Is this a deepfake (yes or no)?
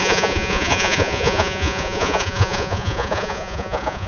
yes